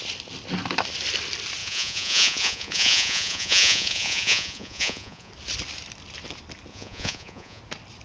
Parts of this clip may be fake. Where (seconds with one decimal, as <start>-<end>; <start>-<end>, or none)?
1.6-5.3; 6.7-7.6

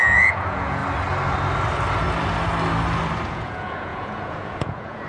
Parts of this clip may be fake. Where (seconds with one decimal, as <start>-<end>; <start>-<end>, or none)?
0.0-0.8; 3.3-5.1

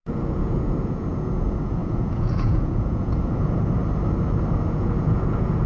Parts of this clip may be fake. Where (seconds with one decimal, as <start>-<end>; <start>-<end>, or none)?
0.0-3.8; 4.6-5.7

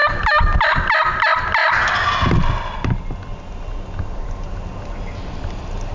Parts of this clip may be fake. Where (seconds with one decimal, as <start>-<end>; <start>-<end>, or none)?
none